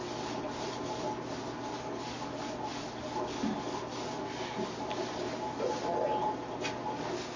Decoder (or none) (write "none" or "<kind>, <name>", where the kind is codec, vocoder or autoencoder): none